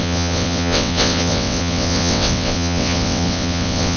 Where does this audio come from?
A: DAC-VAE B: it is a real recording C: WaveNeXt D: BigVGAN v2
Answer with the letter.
C